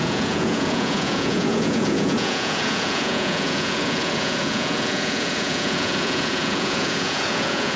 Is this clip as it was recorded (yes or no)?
no